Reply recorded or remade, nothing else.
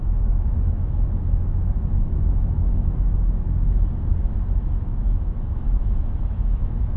remade